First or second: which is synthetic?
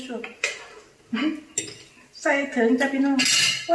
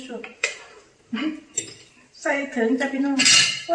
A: second